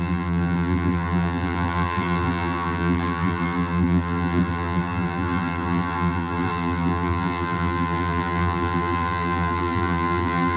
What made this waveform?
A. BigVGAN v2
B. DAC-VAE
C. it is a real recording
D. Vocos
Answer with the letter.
A